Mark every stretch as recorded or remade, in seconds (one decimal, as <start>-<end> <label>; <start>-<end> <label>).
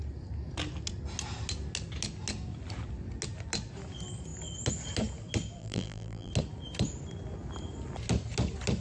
0.0-5.6 recorded; 5.6-6.3 remade; 6.3-8.8 recorded